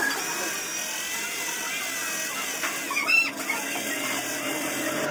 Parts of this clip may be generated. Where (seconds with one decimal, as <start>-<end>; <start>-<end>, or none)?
none